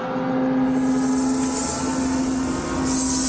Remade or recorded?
recorded